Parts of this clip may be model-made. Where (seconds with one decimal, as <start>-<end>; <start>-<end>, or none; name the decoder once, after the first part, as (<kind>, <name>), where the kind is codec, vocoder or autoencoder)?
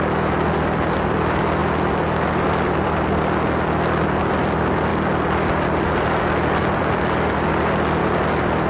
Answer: none